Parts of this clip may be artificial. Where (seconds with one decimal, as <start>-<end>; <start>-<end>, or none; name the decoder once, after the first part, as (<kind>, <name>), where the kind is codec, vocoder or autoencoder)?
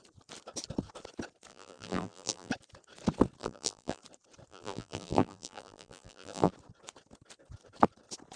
1.5-2.5 (vocoder, BigVGAN v2); 3.4-4.0; 4.5-6.5